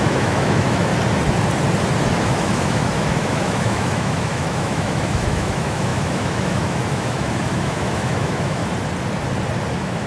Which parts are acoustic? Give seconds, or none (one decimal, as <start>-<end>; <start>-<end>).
0.9-2.1; 8.6-9.7